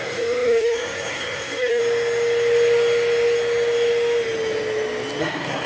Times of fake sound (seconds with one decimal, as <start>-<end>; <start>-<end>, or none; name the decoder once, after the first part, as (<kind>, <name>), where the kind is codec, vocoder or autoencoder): 0.0-1.8 (codec, SNAC); 5.2-5.7